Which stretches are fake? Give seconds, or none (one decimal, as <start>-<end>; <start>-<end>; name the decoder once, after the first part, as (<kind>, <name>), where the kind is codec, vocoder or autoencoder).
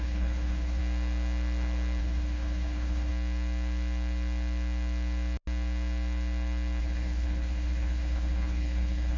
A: 0.0-0.8 (codec, HILCodec); 2.0-3.1; 6.8-9.2